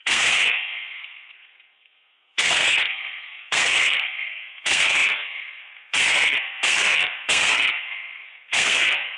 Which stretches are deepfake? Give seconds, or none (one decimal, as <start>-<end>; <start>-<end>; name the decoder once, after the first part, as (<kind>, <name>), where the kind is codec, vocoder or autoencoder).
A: 0.0-9.2 (codec, SNAC)